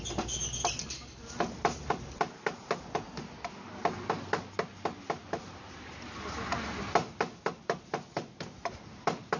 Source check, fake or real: real